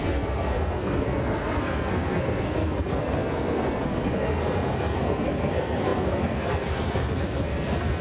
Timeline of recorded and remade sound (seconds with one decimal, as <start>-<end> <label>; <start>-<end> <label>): 0.0-8.0 remade